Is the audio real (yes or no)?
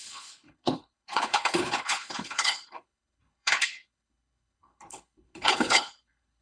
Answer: no